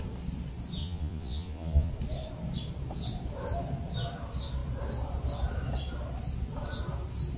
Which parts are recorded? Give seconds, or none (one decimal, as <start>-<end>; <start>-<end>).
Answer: 0.0-0.8; 1.9-7.4